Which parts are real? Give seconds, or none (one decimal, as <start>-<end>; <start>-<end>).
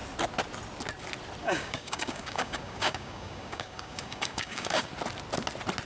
0.0-1.4; 4.9-5.9